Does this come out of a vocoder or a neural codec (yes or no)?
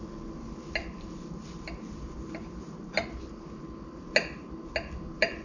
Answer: no